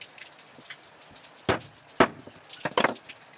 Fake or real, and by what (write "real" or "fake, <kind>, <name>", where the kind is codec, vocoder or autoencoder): real